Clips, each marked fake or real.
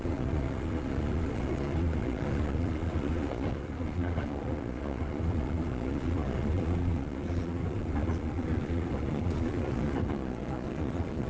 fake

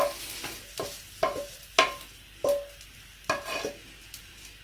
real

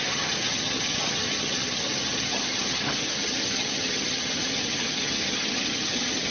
fake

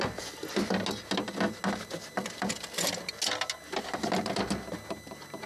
real